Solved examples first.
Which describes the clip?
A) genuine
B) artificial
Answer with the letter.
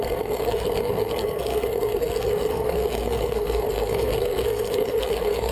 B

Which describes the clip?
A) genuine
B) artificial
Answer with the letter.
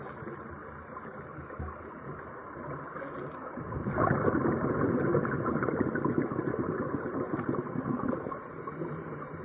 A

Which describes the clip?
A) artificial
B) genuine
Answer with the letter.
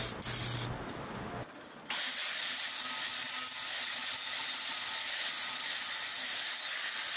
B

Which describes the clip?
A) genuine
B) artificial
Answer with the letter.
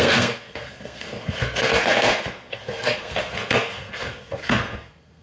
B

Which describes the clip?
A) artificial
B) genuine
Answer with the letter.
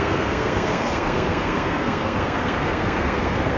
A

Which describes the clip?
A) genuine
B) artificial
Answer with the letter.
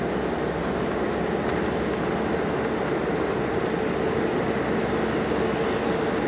A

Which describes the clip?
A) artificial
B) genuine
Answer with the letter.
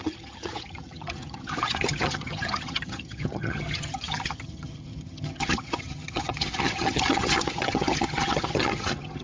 A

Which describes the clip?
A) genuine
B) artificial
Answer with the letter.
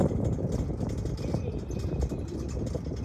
A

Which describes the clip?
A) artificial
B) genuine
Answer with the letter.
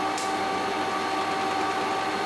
B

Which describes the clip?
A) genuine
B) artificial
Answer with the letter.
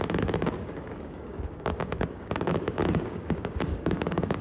B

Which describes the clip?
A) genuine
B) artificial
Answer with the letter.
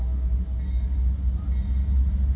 A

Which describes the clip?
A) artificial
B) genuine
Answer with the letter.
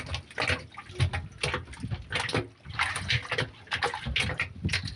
B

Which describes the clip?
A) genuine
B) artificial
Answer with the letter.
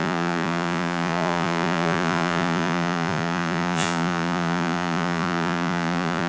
B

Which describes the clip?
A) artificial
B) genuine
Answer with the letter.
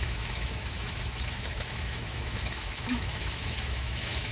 A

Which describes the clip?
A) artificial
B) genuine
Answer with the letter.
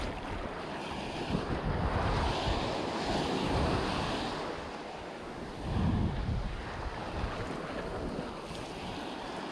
B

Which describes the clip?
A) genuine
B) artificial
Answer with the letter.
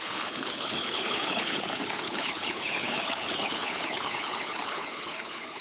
B